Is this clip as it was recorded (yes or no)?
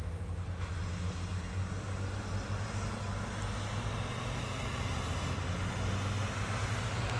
yes